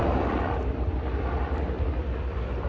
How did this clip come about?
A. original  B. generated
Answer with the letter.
A